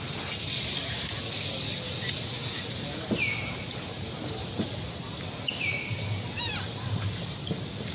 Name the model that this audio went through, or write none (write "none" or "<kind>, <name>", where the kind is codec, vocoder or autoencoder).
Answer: none